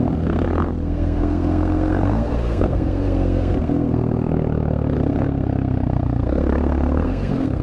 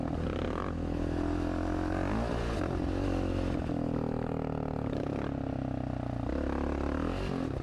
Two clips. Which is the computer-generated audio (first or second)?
first